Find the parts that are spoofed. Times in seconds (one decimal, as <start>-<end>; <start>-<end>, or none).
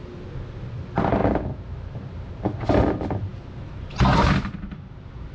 none